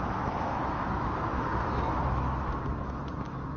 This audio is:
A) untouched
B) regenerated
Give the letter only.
B